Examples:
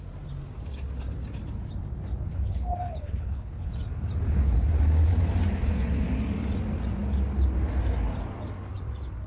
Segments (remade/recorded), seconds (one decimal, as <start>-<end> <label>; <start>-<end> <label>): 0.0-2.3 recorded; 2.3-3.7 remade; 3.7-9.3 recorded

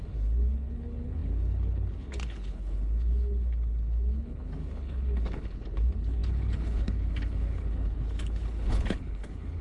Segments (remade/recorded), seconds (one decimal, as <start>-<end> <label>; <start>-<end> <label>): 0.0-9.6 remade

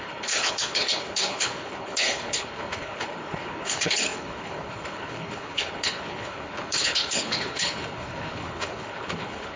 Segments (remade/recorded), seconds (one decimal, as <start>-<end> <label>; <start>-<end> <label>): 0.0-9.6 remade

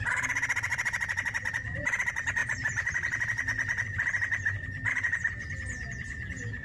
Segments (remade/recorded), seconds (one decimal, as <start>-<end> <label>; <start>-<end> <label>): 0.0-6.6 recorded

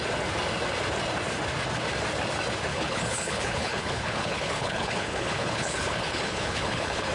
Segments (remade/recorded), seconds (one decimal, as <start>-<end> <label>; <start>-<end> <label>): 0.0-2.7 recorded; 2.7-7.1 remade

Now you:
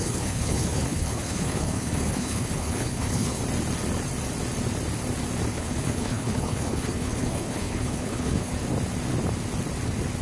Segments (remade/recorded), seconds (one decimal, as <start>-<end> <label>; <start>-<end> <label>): 0.0-3.4 remade; 3.4-5.5 recorded; 5.5-8.5 remade; 8.5-10.2 recorded